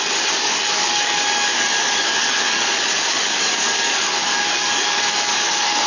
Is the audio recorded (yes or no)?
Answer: no